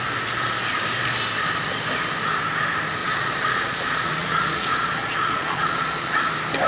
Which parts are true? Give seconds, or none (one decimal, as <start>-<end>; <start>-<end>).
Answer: 0.0-3.0; 6.3-6.7